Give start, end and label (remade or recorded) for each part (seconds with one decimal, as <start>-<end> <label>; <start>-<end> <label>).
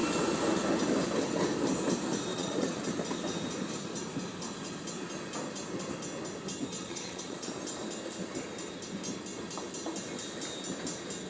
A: 0.0-2.3 recorded; 2.3-2.9 remade; 2.9-6.7 recorded; 6.7-7.5 remade; 7.5-11.3 recorded